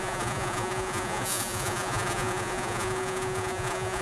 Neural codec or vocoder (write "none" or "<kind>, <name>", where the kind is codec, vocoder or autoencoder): vocoder, Vocos